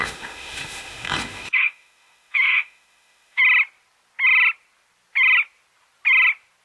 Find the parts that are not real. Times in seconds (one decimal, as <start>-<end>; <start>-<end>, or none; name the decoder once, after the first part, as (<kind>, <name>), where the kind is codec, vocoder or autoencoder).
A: 0.0-3.4 (autoencoder, DAC-VAE)

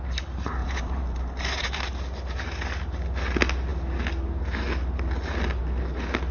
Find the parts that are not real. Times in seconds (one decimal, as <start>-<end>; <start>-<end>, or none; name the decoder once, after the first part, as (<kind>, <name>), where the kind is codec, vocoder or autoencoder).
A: 0.6-1.8 (vocoder, BigVGAN v2)

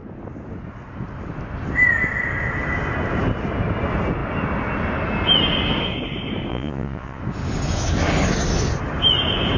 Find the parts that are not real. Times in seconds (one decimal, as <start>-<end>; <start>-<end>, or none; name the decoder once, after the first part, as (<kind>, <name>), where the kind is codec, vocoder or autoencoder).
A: 6.5-7.2 (vocoder, Vocos)

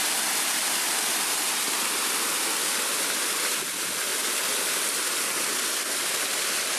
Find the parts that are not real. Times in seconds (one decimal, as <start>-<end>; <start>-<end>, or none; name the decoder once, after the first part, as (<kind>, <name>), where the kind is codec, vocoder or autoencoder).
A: none